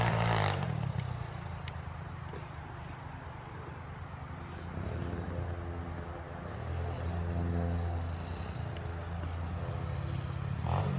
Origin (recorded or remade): recorded